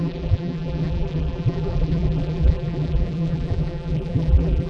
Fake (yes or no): yes